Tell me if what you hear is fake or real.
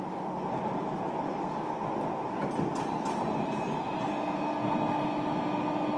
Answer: real